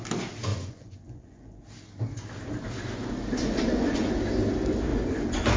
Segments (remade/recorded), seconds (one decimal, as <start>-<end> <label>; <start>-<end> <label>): 0.0-0.5 recorded; 0.5-1.6 remade; 1.6-3.4 recorded; 3.4-4.1 remade; 4.1-4.9 recorded; 4.9-5.6 remade